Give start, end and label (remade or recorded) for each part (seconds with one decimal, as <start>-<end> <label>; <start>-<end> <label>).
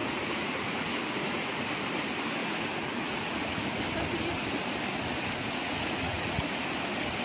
0.0-1.7 remade; 1.7-2.4 recorded; 2.4-3.7 remade; 3.7-5.6 recorded; 5.6-6.7 remade; 6.7-7.2 recorded